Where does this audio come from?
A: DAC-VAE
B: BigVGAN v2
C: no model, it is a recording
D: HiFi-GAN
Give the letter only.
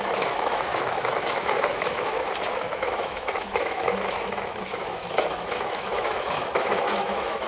A